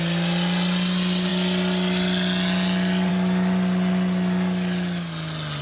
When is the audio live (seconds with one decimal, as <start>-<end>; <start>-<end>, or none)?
0.0-5.6